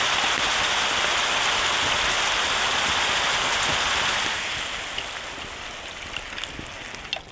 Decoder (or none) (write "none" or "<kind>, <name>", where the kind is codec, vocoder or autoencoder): none